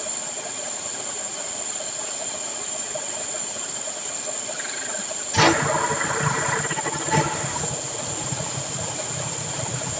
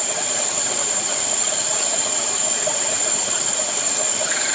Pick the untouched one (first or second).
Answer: first